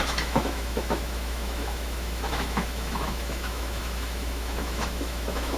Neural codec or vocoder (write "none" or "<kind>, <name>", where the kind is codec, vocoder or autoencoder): autoencoder, DAC-VAE